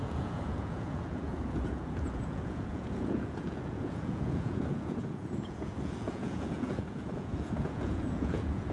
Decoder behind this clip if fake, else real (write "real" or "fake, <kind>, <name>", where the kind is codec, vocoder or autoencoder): fake, vocoder, Vocos